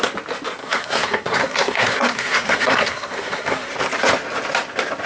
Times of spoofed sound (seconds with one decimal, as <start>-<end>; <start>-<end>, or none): 0.6-3.7